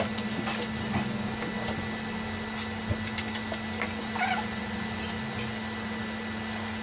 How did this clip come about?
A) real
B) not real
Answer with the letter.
A